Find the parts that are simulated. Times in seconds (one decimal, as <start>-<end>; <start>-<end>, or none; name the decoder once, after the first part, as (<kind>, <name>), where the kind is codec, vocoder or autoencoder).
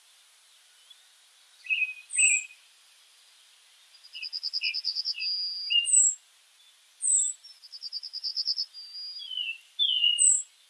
none